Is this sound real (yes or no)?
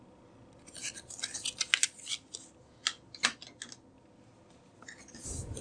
yes